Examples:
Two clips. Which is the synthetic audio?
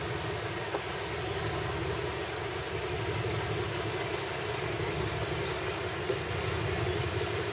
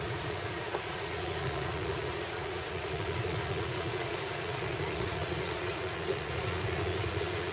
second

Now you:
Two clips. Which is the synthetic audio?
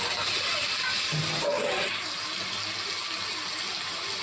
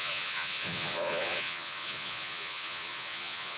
second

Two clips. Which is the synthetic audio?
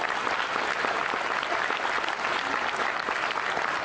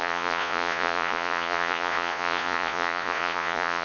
second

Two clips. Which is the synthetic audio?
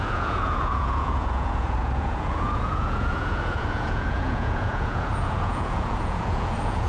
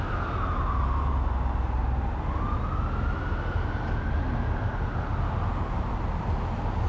first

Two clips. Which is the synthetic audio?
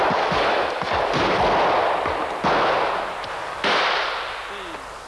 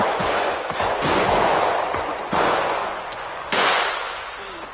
second